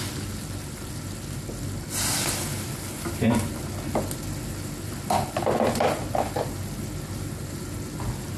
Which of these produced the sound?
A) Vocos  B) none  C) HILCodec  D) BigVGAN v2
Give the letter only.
B